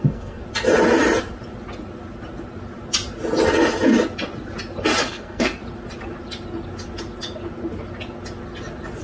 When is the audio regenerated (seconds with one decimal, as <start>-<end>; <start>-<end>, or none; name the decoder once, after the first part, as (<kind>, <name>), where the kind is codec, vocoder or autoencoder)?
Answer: 0.0-0.4 (codec, SNAC); 5.0-5.6